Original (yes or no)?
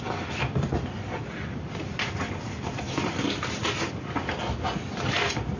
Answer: yes